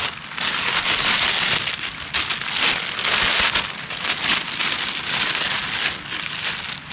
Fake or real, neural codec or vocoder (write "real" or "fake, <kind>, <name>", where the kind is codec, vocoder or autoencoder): real